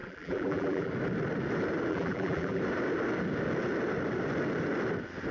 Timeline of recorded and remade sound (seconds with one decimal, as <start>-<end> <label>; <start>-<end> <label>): 0.0-0.9 remade; 0.9-1.9 recorded; 1.9-2.6 remade; 2.6-5.3 recorded